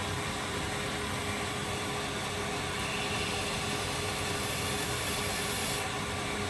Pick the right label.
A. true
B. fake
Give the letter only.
A